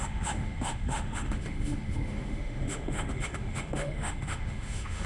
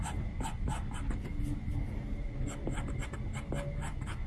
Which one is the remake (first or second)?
first